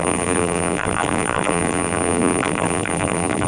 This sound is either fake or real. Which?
fake